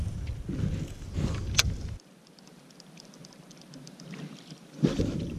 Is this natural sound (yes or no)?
yes